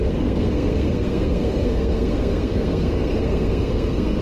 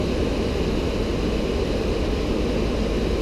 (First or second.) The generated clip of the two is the first